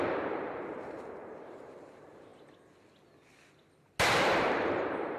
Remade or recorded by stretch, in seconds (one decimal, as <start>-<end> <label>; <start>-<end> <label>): 0.0-2.3 remade; 2.3-4.4 recorded; 4.4-5.2 remade